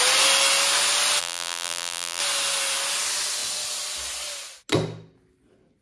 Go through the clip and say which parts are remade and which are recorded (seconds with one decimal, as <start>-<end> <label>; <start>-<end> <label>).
0.0-1.2 recorded; 1.2-2.2 remade; 2.2-5.8 recorded